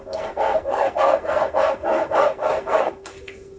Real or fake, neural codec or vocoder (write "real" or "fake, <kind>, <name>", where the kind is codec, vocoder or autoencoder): fake, codec, SNAC